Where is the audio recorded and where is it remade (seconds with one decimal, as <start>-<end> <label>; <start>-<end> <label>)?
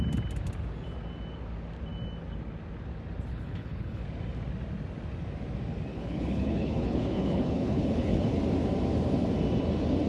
0.0-3.3 recorded; 3.3-4.0 remade; 4.0-5.9 recorded; 5.9-8.4 remade; 8.4-10.1 recorded